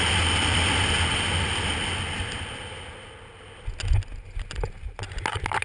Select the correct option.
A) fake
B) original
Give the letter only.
B